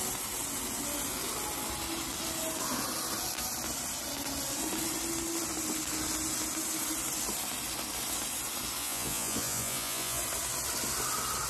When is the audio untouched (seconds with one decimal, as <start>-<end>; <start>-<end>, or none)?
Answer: 0.0-8.8; 10.2-11.5